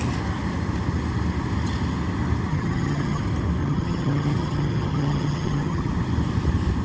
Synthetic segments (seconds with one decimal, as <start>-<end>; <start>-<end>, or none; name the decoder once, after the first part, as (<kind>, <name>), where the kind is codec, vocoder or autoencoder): 2.5-3.2 (vocoder, HiFi-GAN); 3.6-5.9